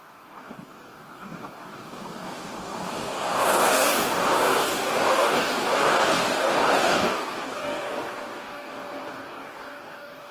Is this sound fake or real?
fake